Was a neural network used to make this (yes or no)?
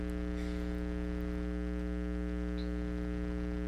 no